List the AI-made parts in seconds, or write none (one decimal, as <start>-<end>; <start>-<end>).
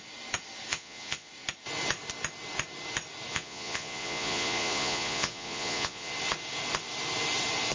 0.7-1.3; 3.3-6.1